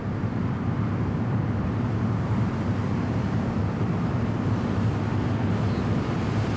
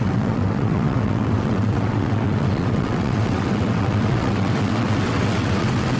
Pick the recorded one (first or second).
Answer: first